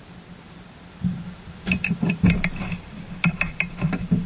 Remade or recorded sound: recorded